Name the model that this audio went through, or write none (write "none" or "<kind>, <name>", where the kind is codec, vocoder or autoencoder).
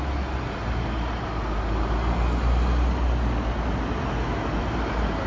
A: none